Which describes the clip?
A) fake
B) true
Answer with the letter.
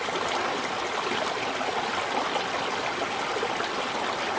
B